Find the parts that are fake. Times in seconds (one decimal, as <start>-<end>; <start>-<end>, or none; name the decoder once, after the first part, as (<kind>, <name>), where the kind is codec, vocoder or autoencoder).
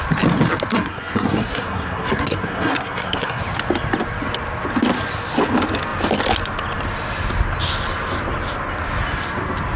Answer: 0.7-3.4 (codec, SNAC)